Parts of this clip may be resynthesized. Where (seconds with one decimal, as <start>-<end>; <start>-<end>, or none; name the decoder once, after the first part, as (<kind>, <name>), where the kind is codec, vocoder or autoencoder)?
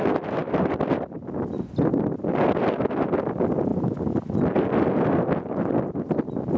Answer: none